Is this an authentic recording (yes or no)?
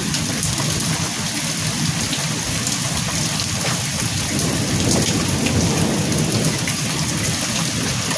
yes